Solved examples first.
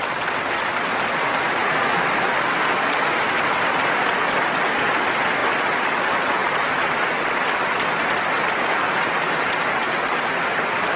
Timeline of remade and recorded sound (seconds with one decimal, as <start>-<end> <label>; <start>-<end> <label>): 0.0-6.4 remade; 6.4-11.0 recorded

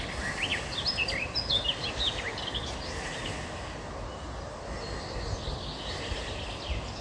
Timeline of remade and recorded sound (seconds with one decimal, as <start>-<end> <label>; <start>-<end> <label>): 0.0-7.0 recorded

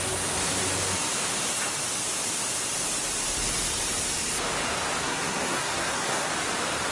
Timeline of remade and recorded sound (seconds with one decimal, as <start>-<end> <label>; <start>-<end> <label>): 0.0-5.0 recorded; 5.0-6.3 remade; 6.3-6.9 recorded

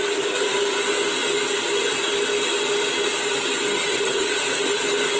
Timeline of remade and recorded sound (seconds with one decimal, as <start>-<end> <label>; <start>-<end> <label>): 0.0-3.9 recorded; 3.9-4.7 remade; 4.7-5.2 recorded

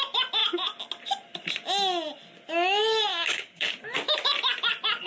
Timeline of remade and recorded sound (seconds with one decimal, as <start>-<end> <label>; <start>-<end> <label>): 0.0-3.1 recorded; 3.1-3.7 remade; 3.7-5.1 recorded

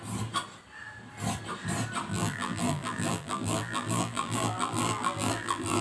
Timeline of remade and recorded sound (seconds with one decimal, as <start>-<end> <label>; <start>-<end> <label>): 0.0-2.1 recorded; 2.1-5.8 remade

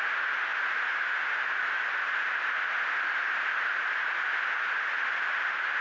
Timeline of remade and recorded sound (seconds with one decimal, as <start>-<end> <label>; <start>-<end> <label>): 0.0-5.8 recorded

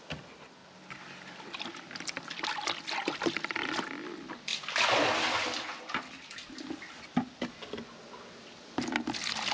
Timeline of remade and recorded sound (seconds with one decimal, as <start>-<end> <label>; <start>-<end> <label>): 0.0-9.5 recorded